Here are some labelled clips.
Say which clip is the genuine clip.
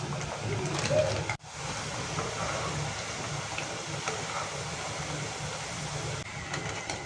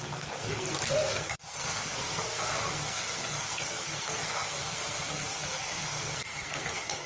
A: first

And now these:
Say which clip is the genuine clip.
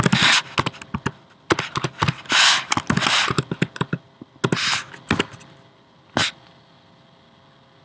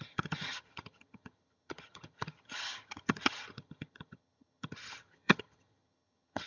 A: first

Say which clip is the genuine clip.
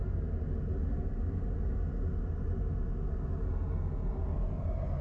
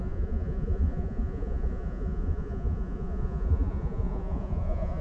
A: first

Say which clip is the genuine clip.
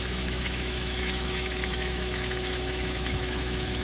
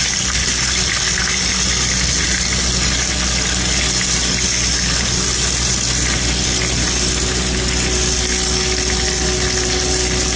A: second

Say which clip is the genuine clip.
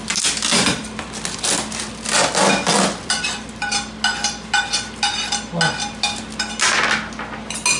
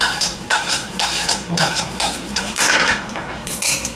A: first